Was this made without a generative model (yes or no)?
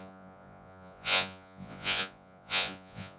no